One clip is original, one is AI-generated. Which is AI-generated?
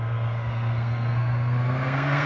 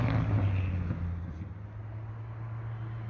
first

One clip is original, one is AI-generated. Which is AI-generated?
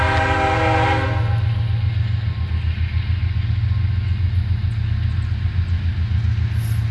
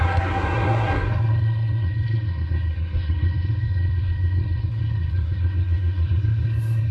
second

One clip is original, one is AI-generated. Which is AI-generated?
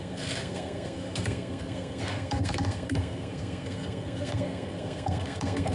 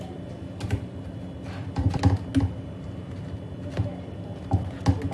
first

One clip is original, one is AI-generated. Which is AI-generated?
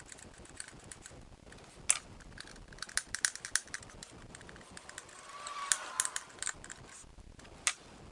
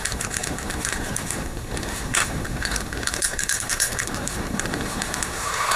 second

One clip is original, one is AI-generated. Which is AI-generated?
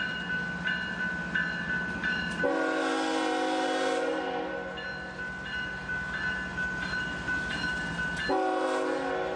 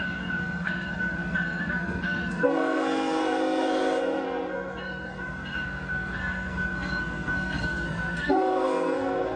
second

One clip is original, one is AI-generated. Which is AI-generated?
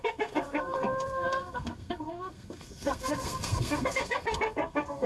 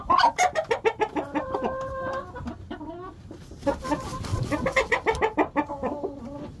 first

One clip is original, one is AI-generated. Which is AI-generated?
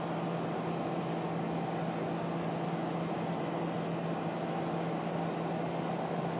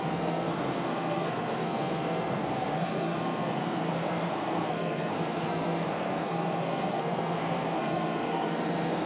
second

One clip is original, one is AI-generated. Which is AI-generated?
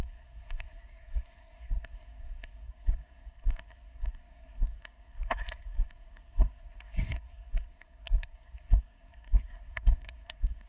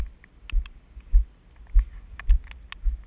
first